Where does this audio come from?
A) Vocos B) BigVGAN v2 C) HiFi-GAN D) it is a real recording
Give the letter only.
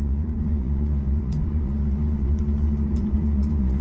A